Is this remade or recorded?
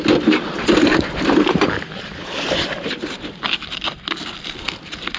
recorded